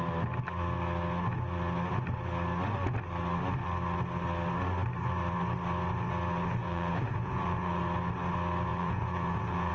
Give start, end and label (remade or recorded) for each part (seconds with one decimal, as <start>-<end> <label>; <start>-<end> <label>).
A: 0.0-6.6 recorded; 6.6-7.8 remade; 7.8-8.7 recorded; 8.7-9.7 remade